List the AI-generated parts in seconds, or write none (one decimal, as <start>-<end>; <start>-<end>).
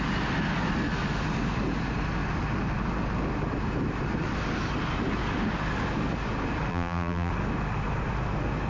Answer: 6.7-7.3